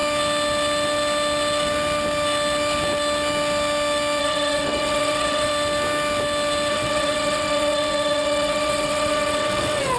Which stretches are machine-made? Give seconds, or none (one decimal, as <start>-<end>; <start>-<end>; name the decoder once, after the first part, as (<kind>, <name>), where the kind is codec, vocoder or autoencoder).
4.2-5.5 (vocoder, WaveNeXt); 6.7-10.0